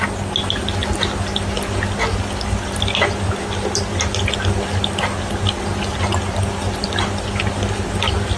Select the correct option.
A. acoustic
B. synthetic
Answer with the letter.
A